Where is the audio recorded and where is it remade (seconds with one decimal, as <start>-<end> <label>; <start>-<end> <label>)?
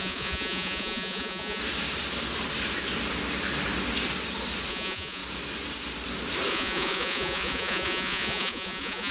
0.0-1.6 remade; 1.6-4.7 recorded; 4.7-5.2 remade; 5.2-6.5 recorded; 6.5-9.1 remade